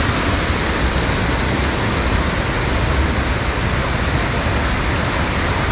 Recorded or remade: recorded